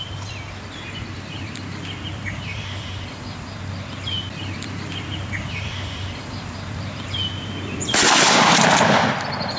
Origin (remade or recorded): remade